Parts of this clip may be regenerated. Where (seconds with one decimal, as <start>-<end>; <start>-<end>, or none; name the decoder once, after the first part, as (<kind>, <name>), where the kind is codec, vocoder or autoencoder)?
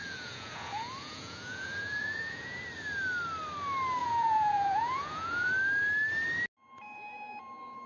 0.0-2.6 (vocoder, Vocos); 4.0-5.5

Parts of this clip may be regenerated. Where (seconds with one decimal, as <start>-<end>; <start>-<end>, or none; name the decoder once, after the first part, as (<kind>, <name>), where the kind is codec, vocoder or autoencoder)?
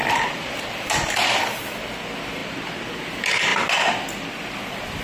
none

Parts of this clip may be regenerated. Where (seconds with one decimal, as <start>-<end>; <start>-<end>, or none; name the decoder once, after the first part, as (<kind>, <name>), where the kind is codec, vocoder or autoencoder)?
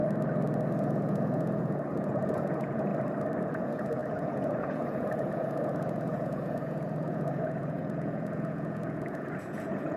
0.8-2.9 (vocoder, Vocos); 3.4-10.0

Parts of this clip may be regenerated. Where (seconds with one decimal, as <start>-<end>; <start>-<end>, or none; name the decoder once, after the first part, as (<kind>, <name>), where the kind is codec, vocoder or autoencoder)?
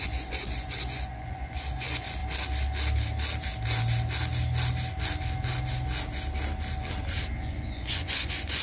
0.0-2.2 (vocoder, Vocos); 7.4-8.6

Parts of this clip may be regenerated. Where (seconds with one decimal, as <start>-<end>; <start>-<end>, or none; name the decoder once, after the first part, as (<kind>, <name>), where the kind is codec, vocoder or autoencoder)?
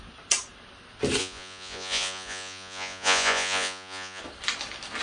1.2-4.2 (vocoder, Vocos)